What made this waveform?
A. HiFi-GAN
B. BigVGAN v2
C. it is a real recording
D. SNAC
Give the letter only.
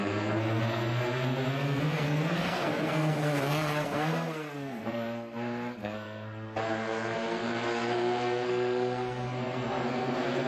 D